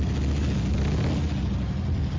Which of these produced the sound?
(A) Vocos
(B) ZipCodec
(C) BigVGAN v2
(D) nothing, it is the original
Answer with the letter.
D